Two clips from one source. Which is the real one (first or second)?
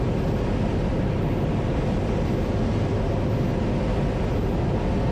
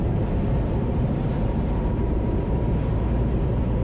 first